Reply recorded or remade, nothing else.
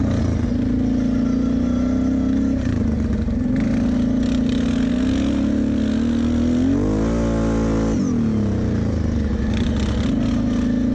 recorded